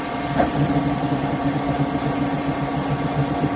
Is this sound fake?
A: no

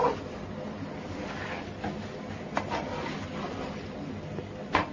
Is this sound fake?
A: no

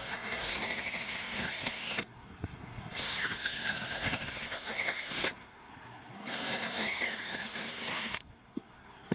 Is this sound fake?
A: yes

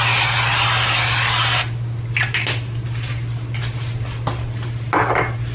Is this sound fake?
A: no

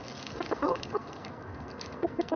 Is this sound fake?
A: yes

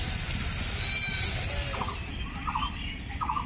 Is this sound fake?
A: no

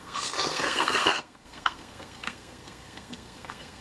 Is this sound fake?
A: yes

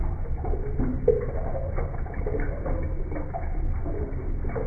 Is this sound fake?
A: no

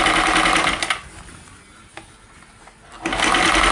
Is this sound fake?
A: no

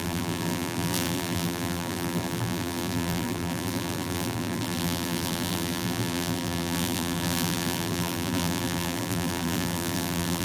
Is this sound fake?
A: yes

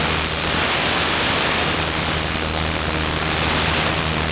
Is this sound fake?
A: no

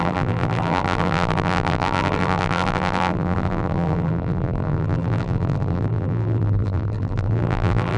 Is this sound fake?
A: yes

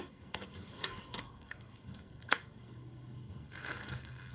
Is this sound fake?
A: yes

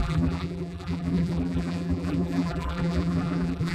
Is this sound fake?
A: yes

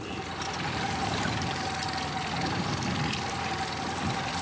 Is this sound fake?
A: no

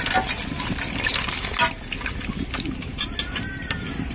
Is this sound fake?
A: no